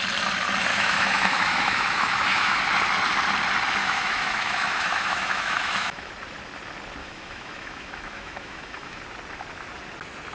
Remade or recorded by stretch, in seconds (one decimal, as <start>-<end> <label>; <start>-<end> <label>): 0.0-0.7 recorded; 0.7-2.6 remade; 2.6-3.8 recorded; 3.8-6.1 remade; 6.1-7.0 recorded; 7.0-9.0 remade; 9.0-10.3 recorded